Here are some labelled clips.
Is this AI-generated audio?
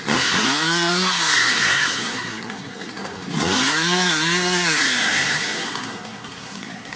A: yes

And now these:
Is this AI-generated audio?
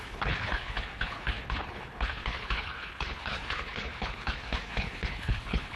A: yes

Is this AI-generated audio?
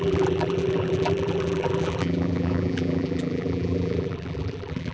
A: yes